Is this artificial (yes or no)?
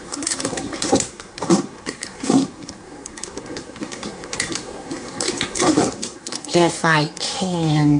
yes